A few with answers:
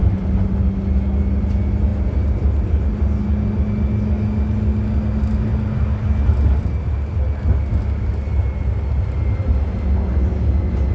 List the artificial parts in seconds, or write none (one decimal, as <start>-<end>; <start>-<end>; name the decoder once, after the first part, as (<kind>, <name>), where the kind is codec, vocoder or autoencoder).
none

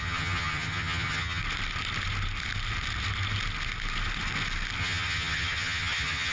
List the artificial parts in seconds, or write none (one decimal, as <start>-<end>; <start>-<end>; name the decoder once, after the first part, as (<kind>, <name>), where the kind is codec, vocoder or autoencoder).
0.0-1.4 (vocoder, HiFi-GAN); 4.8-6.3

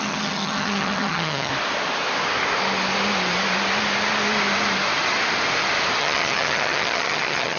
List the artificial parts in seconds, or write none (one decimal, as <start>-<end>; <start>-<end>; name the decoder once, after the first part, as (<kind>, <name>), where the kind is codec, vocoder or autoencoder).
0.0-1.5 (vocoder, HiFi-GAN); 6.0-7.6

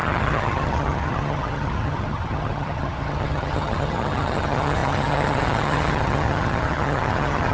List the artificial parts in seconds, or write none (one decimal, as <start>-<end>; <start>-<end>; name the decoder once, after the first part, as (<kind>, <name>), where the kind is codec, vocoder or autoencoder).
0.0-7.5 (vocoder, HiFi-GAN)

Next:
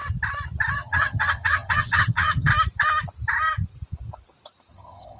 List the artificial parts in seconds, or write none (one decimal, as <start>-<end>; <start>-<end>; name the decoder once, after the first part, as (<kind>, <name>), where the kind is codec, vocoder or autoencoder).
0.7-2.5 (vocoder, HiFi-GAN); 4.7-5.2

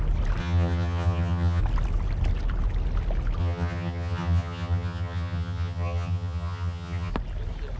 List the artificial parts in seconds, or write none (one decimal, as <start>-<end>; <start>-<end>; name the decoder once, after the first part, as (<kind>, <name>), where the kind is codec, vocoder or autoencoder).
0.4-1.6 (vocoder, HiFi-GAN); 3.4-7.1

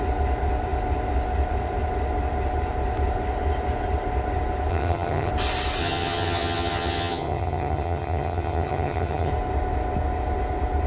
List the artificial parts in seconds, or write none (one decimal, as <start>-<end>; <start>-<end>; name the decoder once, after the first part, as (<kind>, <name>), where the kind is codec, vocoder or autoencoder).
4.7-5.3 (vocoder, HiFi-GAN); 5.8-9.3

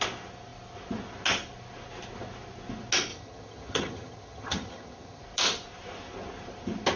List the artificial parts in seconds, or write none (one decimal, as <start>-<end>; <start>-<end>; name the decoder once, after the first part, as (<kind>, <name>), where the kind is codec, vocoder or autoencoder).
3.1-5.2 (vocoder, HiFi-GAN)